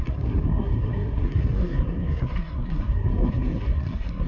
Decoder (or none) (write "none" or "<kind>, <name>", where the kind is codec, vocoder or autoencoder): codec, SNAC